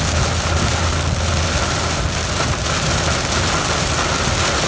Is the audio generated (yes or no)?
no